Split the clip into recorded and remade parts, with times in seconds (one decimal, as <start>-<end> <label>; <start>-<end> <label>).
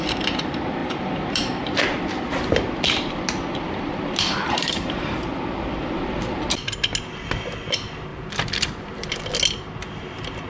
0.0-0.8 recorded; 0.8-5.9 remade; 5.9-8.1 recorded; 8.1-9.2 remade; 9.2-10.5 recorded